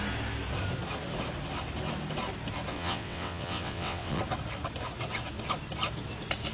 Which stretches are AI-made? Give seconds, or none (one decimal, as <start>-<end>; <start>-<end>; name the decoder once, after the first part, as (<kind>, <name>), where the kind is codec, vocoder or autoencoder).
2.7-4.2 (vocoder, WaveNeXt)